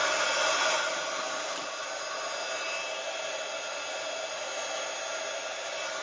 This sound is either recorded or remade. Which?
recorded